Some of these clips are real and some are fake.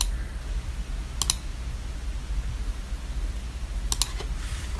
real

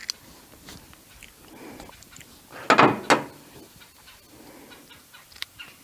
real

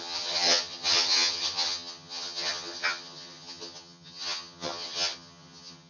fake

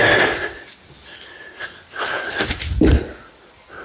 real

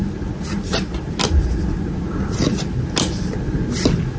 real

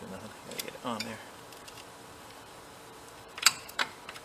fake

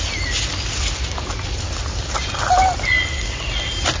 real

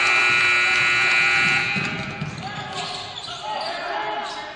real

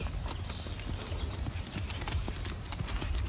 real